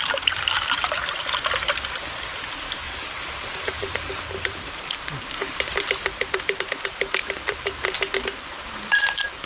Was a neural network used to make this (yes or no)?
yes